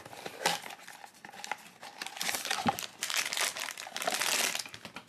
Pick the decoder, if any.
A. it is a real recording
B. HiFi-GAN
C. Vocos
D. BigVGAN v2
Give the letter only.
A